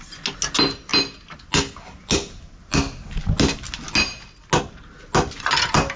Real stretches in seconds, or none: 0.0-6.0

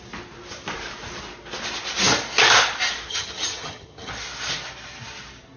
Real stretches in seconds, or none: 0.0-3.1; 4.1-5.6

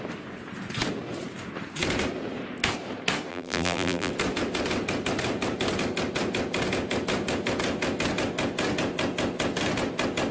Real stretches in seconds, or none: 0.0-3.3; 4.1-10.3

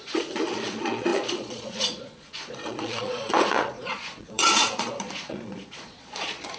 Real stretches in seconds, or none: none

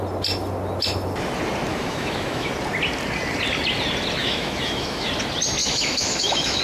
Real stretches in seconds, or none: 0.0-1.7; 2.5-4.2; 5.1-5.6

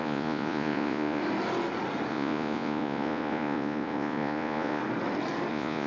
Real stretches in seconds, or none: 1.2-2.1; 4.8-5.5